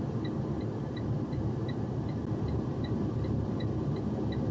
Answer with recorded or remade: recorded